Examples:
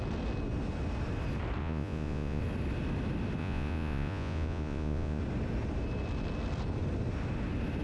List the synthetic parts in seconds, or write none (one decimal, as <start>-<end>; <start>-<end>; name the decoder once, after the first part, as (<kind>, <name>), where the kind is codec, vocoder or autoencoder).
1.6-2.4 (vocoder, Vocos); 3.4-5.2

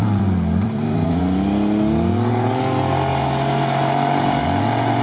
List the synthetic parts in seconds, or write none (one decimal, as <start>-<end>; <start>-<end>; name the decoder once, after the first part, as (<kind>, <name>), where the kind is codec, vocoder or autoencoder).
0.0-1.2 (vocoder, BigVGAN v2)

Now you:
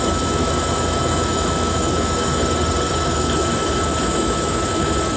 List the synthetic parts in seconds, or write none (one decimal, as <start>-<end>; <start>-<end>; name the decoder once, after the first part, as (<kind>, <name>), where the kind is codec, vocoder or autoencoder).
0.0-2.4 (autoencoder, DAC-VAE); 2.9-5.2